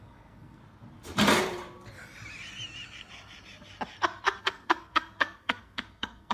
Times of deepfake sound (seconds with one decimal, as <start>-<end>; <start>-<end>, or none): 0.0-0.6; 4.4-6.3